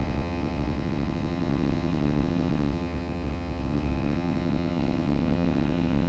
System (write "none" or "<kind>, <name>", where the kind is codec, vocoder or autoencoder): vocoder, WaveNeXt